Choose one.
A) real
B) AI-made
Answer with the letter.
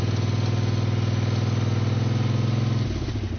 A